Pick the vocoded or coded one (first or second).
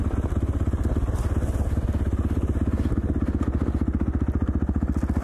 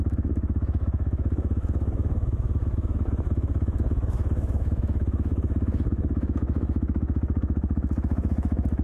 second